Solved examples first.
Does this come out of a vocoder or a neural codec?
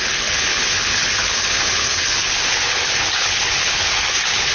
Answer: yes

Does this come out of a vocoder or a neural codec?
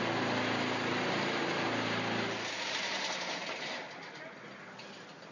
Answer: no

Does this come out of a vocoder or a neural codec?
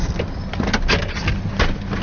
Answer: no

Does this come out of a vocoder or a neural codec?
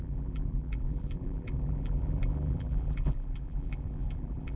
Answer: yes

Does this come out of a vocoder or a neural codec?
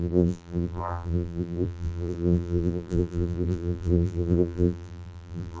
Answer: yes